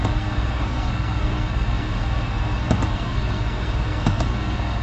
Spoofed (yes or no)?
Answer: yes